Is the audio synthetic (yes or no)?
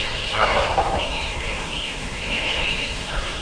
yes